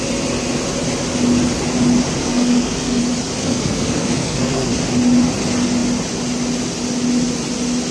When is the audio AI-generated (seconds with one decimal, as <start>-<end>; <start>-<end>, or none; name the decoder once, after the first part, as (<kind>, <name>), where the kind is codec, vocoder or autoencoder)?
2.2-3.0 (codec, SNAC); 3.4-4.7

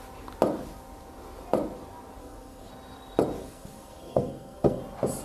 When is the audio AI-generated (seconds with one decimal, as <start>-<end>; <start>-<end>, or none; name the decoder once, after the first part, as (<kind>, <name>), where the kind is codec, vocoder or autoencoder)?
2.2-2.7 (codec, SNAC); 3.4-4.8

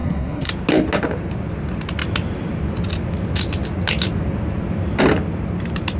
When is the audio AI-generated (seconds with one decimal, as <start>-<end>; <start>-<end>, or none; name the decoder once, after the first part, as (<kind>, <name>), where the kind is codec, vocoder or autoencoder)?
0.0-0.5 (codec, SNAC)

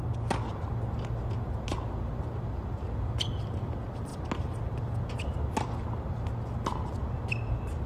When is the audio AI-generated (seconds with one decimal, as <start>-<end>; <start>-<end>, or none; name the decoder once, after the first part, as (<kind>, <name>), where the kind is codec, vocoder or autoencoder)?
none

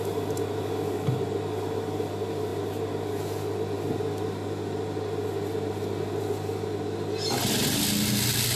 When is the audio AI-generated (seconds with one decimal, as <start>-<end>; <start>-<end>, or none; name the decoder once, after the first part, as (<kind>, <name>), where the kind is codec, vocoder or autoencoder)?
none